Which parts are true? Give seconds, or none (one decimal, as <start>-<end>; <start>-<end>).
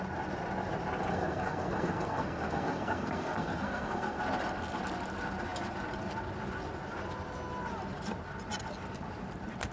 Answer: 0.0-1.1; 4.2-9.7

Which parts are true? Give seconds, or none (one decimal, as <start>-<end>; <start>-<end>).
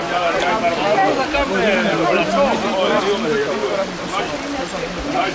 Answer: 0.0-5.3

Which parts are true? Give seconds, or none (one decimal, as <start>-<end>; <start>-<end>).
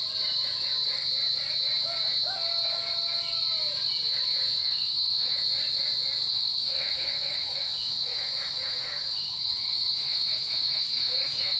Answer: 0.0-4.6; 5.4-6.3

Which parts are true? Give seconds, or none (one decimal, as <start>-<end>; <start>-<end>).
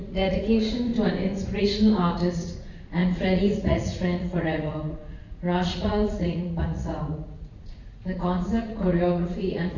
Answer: 0.9-1.6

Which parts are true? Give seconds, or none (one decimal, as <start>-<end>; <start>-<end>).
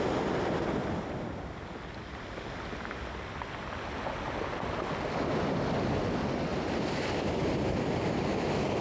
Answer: 0.0-0.8; 1.5-6.5; 8.4-8.8